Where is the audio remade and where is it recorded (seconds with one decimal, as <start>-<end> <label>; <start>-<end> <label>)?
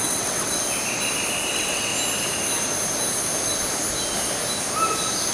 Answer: 0.0-0.6 remade; 0.6-1.5 recorded; 1.5-1.9 remade; 1.9-5.3 recorded